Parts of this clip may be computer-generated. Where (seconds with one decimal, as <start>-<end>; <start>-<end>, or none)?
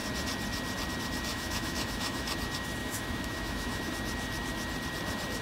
1.3-2.3; 2.8-3.9